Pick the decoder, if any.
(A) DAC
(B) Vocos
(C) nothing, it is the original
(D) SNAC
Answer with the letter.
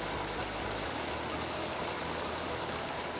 C